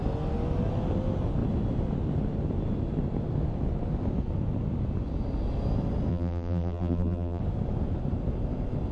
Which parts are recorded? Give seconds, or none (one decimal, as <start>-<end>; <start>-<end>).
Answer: 0.0-6.1; 7.4-8.9